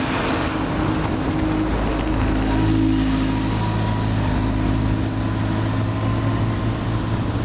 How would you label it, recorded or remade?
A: recorded